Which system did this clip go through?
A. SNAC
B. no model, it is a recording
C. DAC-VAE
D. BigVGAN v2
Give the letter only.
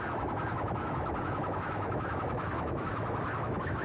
C